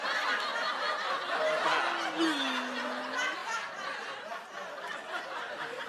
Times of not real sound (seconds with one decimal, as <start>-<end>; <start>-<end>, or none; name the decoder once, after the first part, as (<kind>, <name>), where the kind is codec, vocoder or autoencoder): none